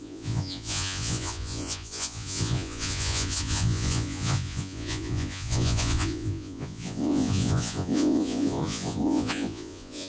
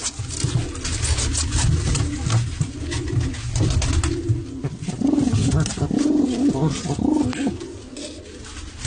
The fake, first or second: first